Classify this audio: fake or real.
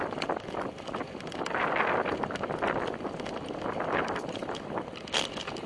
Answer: real